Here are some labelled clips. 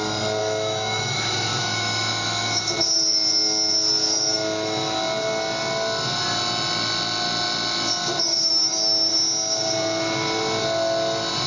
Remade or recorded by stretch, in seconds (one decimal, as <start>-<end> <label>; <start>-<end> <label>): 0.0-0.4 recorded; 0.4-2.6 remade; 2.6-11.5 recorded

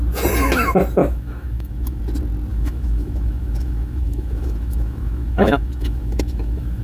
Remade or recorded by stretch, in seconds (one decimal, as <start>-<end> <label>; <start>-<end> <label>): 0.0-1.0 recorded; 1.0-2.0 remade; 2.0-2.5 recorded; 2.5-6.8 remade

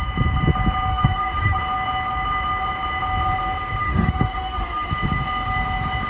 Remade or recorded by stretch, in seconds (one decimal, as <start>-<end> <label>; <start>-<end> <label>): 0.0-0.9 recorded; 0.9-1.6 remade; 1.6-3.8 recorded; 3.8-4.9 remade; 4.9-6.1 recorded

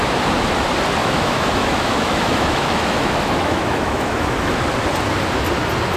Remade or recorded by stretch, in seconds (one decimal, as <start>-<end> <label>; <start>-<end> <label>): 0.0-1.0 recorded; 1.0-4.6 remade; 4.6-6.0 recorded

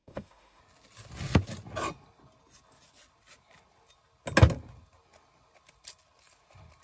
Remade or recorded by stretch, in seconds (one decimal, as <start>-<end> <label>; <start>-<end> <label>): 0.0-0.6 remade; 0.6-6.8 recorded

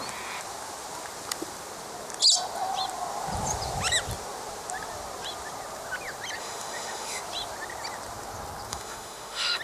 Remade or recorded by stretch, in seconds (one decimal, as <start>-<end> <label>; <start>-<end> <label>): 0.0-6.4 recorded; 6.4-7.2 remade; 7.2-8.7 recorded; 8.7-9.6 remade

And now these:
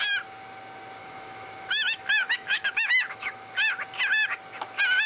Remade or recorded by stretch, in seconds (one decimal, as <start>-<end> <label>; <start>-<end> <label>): 0.0-1.0 recorded; 1.0-3.5 remade; 3.5-5.1 recorded